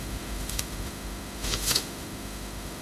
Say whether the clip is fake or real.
fake